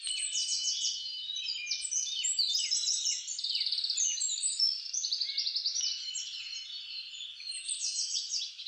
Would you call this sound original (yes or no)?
no